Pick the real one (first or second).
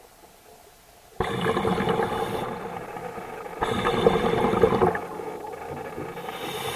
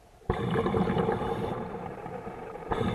first